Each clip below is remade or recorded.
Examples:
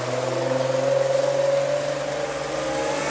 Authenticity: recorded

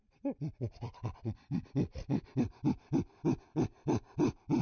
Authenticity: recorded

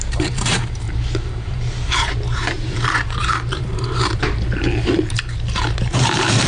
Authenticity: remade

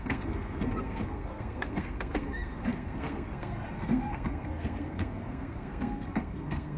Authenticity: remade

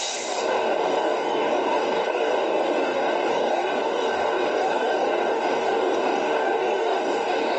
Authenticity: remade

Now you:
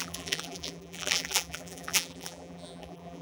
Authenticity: remade